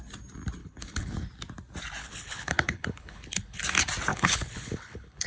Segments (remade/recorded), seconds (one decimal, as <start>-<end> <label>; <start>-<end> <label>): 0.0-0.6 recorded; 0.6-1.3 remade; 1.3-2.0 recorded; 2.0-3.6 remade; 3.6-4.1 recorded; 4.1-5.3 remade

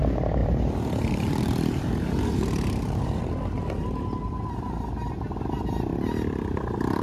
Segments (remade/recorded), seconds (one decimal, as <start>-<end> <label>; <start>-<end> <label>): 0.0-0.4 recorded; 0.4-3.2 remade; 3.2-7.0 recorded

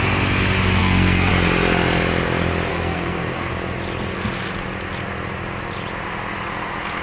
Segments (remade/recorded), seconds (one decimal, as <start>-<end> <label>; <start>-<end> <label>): 0.0-0.8 recorded; 0.8-1.3 remade; 1.3-2.7 recorded; 2.7-3.5 remade; 3.5-7.0 recorded

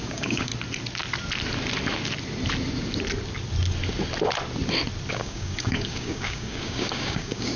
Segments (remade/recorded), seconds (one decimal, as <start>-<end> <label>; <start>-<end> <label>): 0.0-0.5 remade; 0.5-5.1 recorded; 5.1-7.6 remade

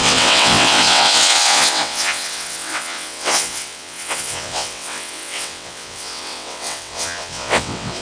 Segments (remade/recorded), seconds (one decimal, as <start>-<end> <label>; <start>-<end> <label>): 0.0-8.0 remade